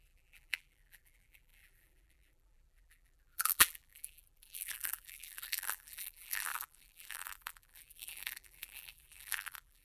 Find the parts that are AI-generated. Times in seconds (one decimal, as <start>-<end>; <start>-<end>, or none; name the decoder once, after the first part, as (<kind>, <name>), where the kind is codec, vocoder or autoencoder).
0.0-9.8 (vocoder, BigVGAN v2)

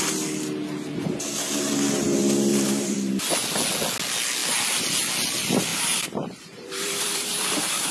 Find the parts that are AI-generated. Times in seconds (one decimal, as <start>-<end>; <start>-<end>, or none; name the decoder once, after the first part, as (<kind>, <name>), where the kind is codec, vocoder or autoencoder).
2.5-3.3 (vocoder, BigVGAN v2); 5.7-7.9

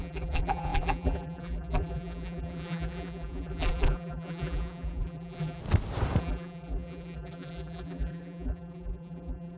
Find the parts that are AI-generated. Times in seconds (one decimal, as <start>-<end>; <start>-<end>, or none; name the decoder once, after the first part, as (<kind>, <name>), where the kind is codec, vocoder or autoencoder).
0.0-5.6 (vocoder, BigVGAN v2); 6.2-9.6

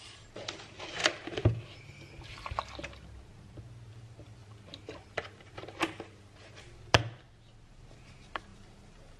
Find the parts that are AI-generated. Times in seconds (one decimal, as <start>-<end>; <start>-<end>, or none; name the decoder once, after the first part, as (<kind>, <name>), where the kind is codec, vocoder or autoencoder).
0.0-1.0 (vocoder, BigVGAN v2); 3.9-4.4; 7.7-9.2